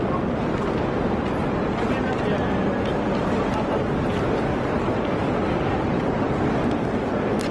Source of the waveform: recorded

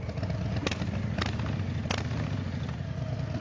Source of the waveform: recorded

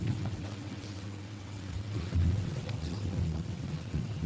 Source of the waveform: remade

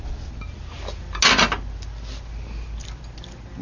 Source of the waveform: recorded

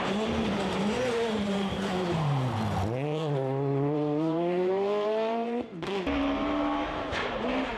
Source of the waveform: remade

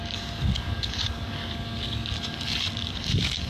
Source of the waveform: remade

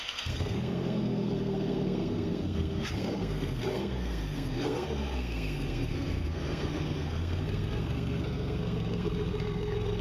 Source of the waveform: remade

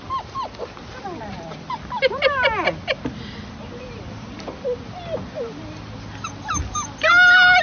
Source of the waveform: recorded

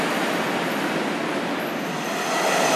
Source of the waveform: recorded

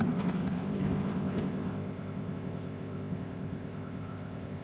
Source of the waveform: remade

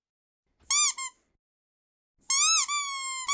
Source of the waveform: recorded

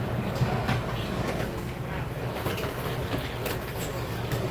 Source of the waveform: remade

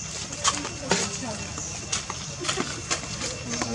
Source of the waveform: recorded